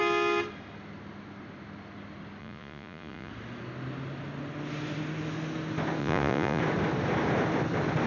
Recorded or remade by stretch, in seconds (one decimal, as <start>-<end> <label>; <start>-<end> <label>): 0.0-2.4 recorded; 2.4-3.3 remade; 3.3-6.0 recorded; 6.0-6.6 remade; 6.6-8.1 recorded